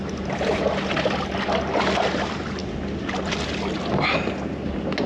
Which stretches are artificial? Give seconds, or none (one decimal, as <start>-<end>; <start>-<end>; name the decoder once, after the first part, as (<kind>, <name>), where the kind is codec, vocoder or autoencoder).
none